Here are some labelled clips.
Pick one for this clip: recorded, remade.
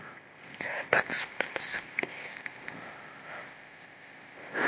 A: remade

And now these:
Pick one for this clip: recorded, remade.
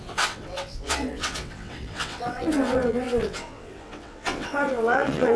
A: remade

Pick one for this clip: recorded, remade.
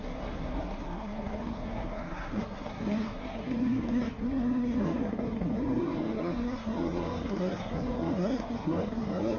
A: remade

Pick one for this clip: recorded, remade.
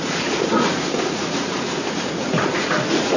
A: remade